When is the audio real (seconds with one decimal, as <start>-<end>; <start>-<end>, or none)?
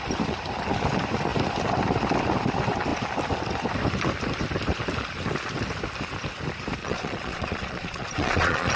0.0-6.8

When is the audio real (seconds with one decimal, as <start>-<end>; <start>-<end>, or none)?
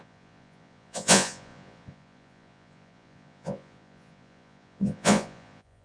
none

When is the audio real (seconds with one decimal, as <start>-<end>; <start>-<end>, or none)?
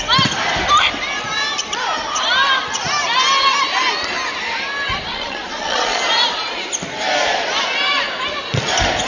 0.0-5.1; 6.0-9.1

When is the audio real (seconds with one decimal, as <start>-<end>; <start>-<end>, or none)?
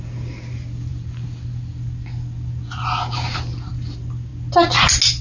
0.0-5.2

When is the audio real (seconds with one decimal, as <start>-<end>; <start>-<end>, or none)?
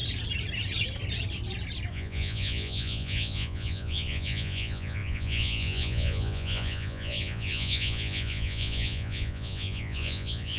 0.0-1.9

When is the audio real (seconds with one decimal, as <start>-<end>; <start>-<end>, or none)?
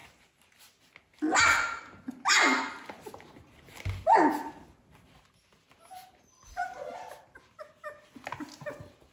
0.0-9.1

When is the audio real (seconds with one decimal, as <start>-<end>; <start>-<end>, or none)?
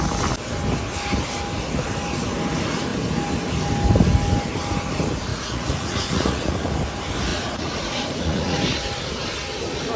0.0-5.3; 6.7-7.3; 8.6-10.0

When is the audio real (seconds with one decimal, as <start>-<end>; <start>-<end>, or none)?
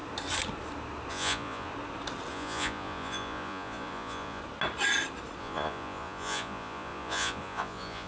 0.0-1.1; 1.7-2.3; 4.4-5.4